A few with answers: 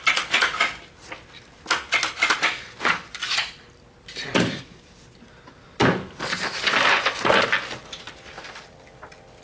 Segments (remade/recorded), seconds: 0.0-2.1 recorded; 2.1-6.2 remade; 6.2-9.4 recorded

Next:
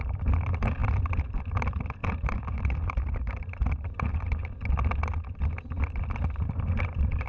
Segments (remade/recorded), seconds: 0.0-2.0 recorded; 2.0-4.5 remade; 4.5-7.3 recorded

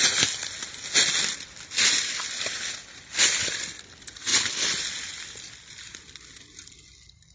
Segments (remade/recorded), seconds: 0.0-7.3 recorded

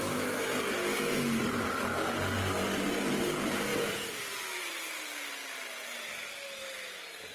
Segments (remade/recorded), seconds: 0.0-7.3 recorded